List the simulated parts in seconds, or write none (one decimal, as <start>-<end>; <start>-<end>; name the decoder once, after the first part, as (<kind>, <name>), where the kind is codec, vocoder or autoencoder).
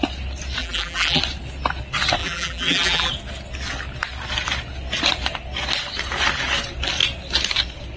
0.6-1.2 (vocoder, BigVGAN v2); 2.2-3.1